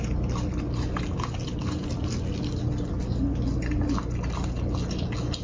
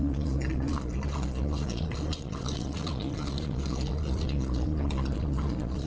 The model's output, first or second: second